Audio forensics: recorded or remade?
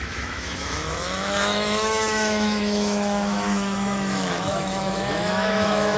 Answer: remade